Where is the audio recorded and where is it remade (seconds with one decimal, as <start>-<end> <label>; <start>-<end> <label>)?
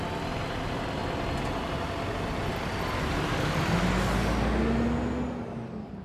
0.0-6.0 recorded